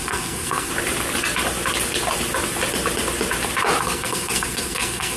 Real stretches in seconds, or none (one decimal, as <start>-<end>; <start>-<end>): 0.7-3.8